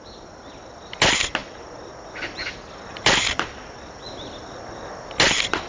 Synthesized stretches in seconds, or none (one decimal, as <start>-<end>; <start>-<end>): 1.4-4.6